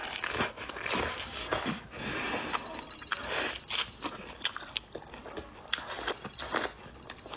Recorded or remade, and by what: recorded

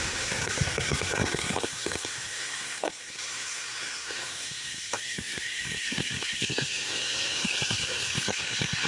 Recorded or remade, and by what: remade, codec, SNAC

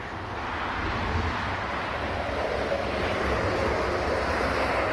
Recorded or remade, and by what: recorded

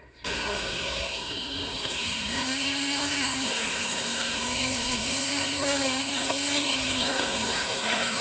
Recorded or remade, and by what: remade, codec, SNAC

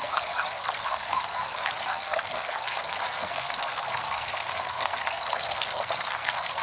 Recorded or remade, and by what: remade, codec, SNAC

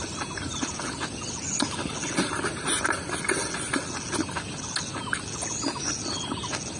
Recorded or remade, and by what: recorded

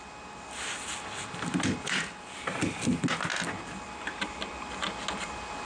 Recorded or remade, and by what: recorded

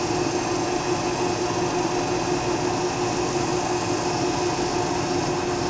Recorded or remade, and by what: recorded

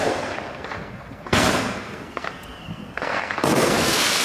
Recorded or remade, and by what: remade, codec, SNAC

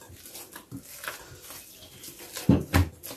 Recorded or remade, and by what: recorded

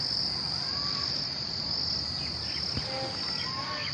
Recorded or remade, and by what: recorded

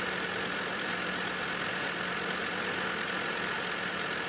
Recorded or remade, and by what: recorded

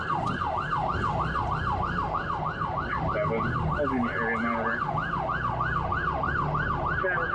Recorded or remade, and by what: recorded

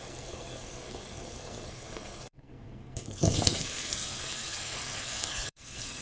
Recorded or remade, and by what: remade, codec, SNAC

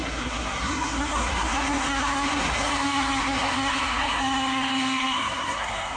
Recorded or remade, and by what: remade, codec, SNAC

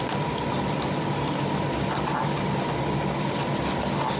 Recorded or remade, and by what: recorded